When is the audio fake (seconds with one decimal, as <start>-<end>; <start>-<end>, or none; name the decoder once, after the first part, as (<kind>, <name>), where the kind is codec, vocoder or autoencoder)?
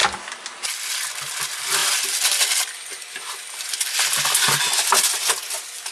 none